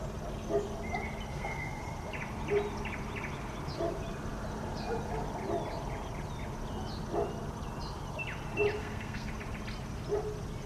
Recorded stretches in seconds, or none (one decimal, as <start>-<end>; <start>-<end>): 0.0-1.3; 1.8-8.8; 9.3-10.7